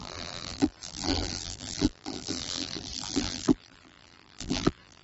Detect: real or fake fake